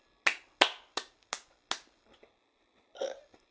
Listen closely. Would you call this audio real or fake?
real